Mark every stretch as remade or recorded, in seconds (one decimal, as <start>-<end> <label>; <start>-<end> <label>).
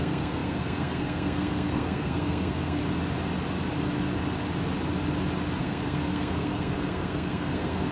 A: 0.0-2.8 remade; 2.8-5.6 recorded; 5.6-7.9 remade